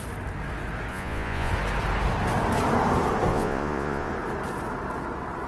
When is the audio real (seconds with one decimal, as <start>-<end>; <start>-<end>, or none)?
0.0-0.9; 1.5-3.3; 4.1-5.5